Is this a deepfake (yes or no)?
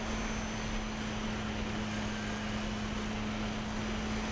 no